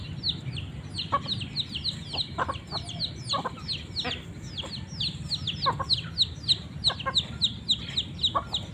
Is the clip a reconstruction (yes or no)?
no